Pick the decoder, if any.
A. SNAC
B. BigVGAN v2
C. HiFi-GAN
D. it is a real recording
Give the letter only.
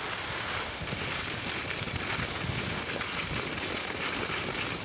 D